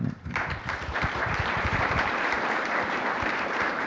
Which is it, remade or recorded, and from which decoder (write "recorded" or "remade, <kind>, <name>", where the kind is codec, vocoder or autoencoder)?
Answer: remade, vocoder, BigVGAN v2